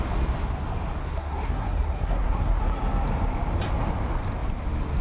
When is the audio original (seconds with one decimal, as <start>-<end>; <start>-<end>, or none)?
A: 0.0-1.0; 2.6-5.0

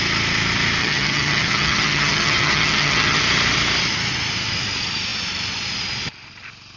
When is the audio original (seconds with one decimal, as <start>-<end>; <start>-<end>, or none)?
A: 0.0-0.8; 3.2-6.8

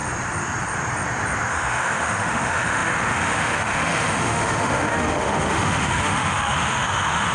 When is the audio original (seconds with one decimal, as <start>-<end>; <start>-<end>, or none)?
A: 0.0-1.5

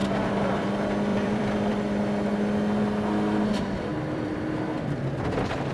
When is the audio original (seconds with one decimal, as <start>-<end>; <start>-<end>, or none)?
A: 0.7-1.1; 2.0-3.9; 4.4-5.7

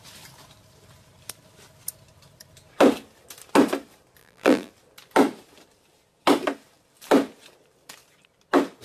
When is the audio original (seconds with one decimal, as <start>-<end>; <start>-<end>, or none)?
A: 0.0-4.2; 4.7-8.8

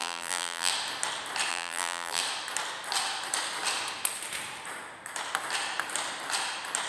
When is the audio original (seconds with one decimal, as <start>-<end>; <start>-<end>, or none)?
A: 0.7-1.5; 2.2-6.9

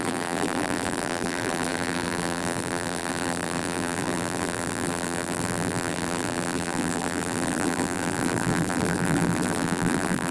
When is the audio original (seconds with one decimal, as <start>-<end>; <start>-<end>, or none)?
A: none